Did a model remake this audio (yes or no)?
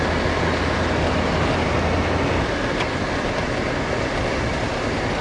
no